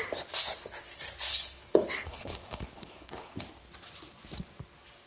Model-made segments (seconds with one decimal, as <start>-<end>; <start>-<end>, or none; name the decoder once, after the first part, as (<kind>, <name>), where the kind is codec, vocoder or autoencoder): 1.3-3.4 (codec, HILCodec)